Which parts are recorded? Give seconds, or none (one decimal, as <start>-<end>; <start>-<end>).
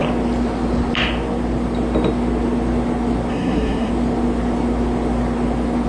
0.0-3.3; 3.9-5.9